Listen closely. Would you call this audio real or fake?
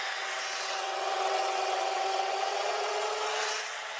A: fake